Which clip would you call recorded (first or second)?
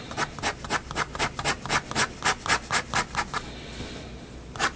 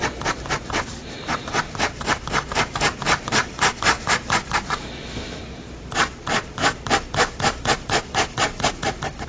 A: first